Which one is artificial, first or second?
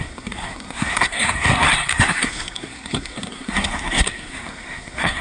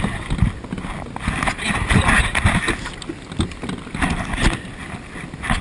first